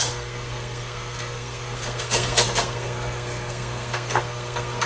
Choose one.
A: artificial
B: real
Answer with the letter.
A